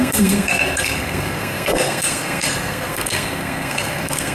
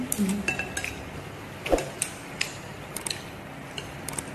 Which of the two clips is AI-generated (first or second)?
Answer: first